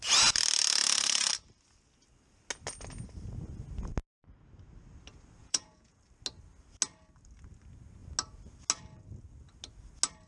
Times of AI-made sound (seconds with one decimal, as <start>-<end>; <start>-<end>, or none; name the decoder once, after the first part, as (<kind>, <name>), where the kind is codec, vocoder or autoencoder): 5.4-6.0 (vocoder, Vocos)